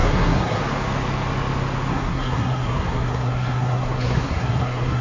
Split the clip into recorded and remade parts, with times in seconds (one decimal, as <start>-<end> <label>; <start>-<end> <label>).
0.0-0.6 remade; 0.6-1.9 recorded; 1.9-5.0 remade